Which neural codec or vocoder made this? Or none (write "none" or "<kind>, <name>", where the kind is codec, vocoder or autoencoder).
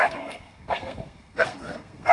codec, SNAC